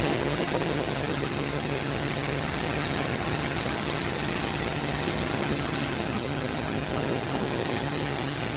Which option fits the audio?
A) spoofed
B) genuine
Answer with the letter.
A